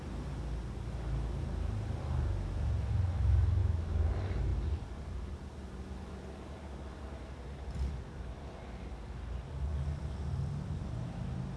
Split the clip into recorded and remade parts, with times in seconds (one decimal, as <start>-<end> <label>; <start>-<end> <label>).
0.0-3.6 recorded; 3.6-4.1 remade; 4.1-11.6 recorded